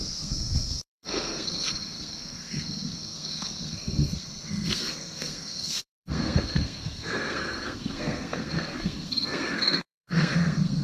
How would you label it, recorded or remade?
remade